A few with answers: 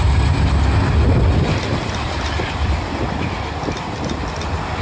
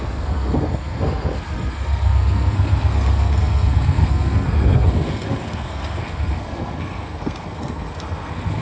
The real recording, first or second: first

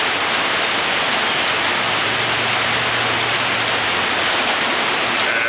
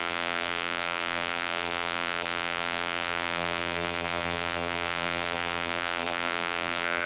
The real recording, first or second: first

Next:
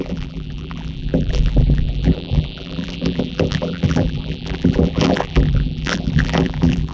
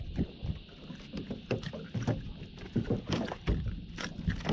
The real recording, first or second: second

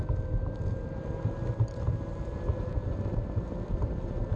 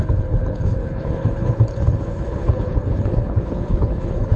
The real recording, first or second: first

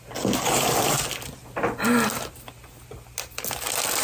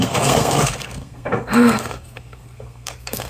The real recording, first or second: first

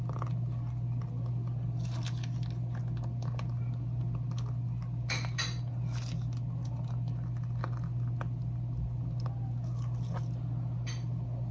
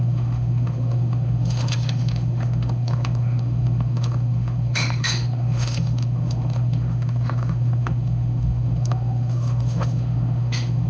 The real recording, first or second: first